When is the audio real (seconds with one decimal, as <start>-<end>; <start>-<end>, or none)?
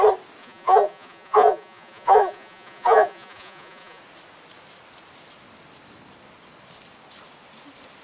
0.0-0.4; 4.0-8.0